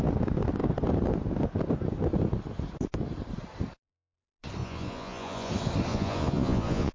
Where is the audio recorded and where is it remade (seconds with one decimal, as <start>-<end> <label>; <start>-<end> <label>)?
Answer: 0.0-4.6 recorded; 4.6-5.5 remade; 5.5-5.9 recorded; 5.9-6.9 remade